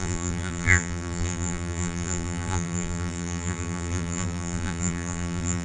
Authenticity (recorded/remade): remade